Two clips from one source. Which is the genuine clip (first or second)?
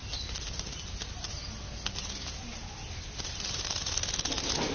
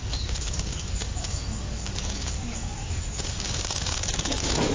first